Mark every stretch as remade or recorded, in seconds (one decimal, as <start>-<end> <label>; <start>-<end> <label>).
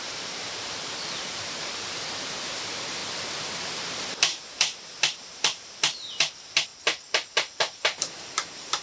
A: 0.0-3.0 remade; 3.0-3.9 recorded; 3.9-6.7 remade; 6.7-7.3 recorded; 7.3-8.8 remade